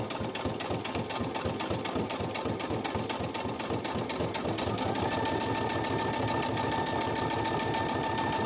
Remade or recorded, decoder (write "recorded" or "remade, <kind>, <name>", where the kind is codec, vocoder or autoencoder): recorded